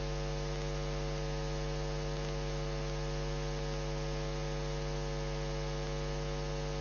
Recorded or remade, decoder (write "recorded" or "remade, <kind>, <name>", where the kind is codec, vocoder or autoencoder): recorded